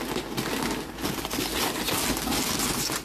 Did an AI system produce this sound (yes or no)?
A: no